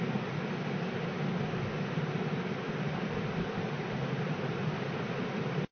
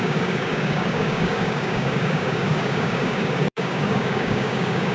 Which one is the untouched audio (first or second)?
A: first